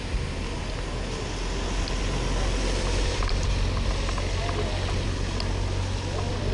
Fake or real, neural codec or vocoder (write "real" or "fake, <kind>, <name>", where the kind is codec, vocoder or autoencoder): real